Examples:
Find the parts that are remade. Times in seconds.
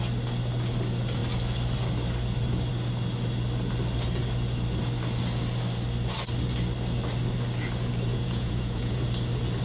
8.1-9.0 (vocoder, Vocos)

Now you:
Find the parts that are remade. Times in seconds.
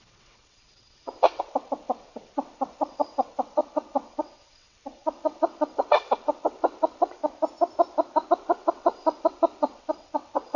0.0-7.2 (vocoder, WaveNeXt); 8.3-10.6